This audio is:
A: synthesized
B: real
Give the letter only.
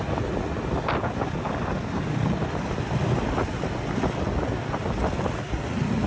B